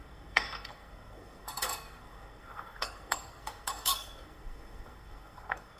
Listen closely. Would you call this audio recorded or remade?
remade